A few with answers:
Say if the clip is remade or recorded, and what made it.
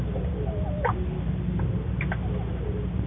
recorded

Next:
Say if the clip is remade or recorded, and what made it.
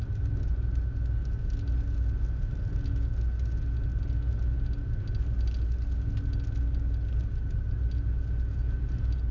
recorded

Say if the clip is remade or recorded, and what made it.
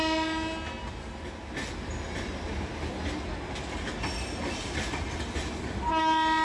recorded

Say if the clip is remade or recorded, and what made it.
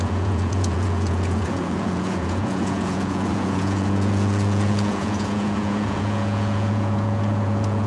remade, vocoder, Vocos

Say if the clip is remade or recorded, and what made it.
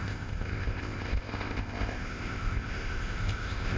remade, codec, ZipCodec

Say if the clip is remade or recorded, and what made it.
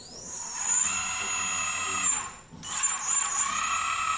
recorded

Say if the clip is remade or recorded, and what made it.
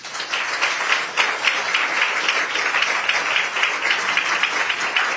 recorded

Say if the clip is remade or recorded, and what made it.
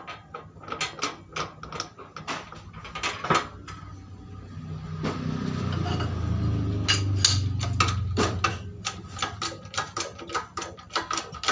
recorded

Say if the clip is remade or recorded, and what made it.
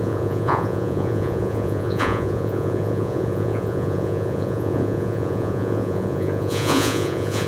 remade, vocoder, Vocos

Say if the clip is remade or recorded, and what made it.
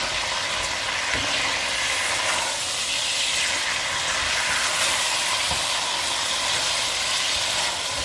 recorded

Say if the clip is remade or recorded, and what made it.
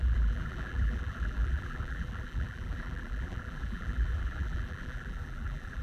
remade, vocoder, BigVGAN v2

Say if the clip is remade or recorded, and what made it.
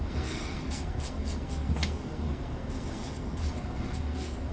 remade, codec, SNAC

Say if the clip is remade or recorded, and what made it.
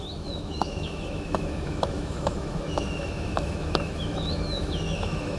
remade, autoencoder, DAC-VAE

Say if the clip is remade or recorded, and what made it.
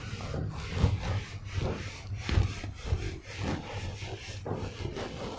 recorded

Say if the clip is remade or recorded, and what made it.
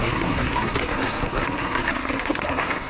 remade, codec, SNAC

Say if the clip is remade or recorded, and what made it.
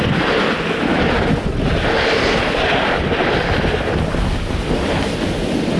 recorded